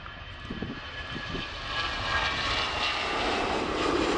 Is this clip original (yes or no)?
no